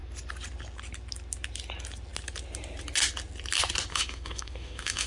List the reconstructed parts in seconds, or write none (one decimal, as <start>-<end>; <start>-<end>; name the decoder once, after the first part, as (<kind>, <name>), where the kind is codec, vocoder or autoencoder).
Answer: 3.9-5.1 (autoencoder, DAC-VAE)